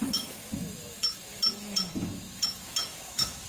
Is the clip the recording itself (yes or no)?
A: no